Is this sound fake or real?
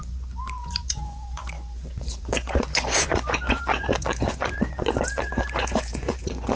fake